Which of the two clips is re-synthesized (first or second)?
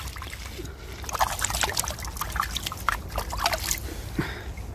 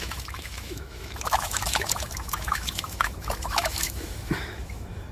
second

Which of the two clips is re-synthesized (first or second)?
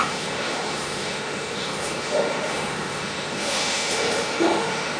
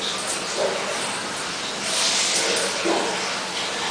first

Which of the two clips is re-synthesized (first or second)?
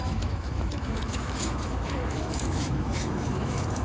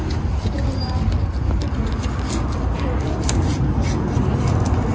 first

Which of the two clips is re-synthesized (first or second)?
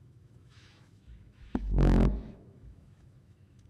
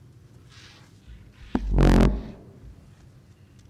first